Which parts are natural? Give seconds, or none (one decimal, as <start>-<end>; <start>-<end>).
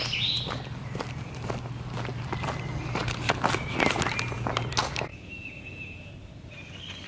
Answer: 0.0-5.1; 6.1-7.1